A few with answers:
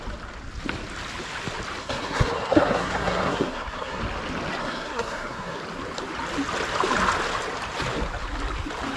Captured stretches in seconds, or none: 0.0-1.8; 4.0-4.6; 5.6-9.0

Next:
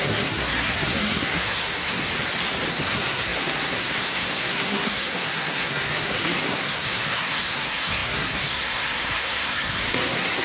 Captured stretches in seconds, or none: 2.1-2.7

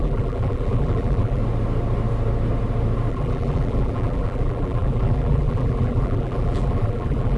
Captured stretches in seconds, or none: 1.4-3.1

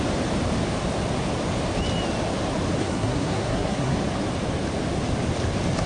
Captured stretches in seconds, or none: 0.0-2.8; 4.0-5.9

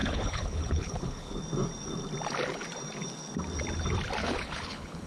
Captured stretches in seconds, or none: 1.4-4.2

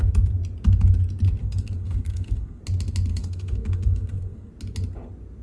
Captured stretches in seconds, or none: 0.0-1.4; 2.6-3.1; 4.5-5.4

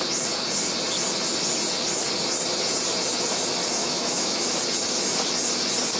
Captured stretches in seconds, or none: 0.0-3.8; 4.4-6.0

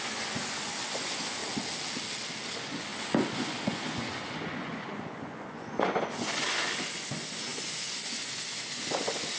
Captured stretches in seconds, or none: 1.4-2.4